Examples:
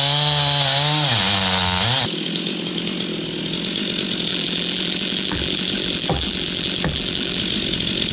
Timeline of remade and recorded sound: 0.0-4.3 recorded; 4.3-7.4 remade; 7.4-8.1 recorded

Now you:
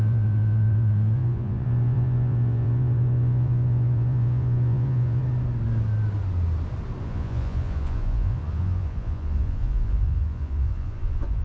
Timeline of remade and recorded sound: 0.0-5.2 remade; 5.2-7.0 recorded; 7.0-11.4 remade

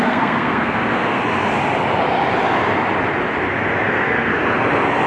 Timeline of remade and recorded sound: 0.0-1.2 remade; 1.2-3.9 recorded; 3.9-4.3 remade; 4.3-5.1 recorded

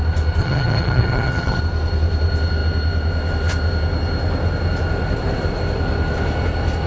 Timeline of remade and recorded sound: 0.0-0.4 recorded; 0.4-1.6 remade; 1.6-6.9 recorded

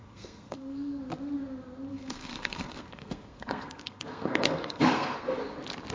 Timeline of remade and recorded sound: 0.0-1.0 remade; 1.0-1.9 recorded; 1.9-5.4 remade; 5.4-5.9 recorded

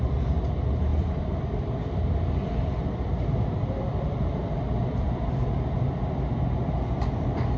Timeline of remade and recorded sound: 0.0-0.9 recorded; 0.9-5.3 remade; 5.3-7.6 recorded